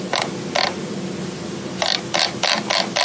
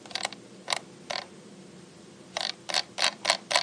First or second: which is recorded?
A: first